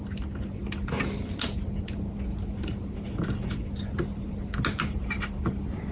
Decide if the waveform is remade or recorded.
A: recorded